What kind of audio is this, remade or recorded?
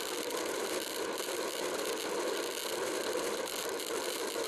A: recorded